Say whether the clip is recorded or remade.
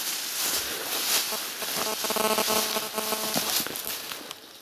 recorded